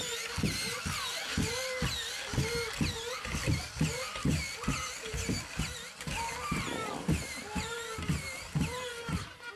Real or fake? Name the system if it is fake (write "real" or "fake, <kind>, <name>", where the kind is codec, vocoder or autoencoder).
real